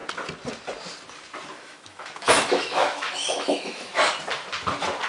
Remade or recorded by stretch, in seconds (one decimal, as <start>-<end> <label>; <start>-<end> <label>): 0.0-1.5 recorded; 1.5-3.9 remade; 3.9-5.1 recorded